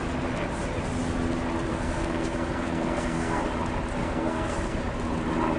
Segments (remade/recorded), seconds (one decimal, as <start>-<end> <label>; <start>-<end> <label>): 0.0-1.7 recorded; 1.7-3.4 remade; 3.4-4.0 recorded; 4.0-4.8 remade; 4.8-5.6 recorded